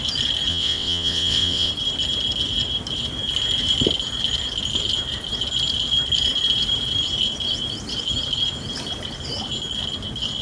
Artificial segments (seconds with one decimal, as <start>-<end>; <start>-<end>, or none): 0.5-1.7

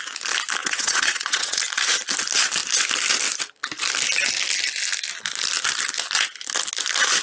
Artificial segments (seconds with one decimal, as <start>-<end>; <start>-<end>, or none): 0.6-1.6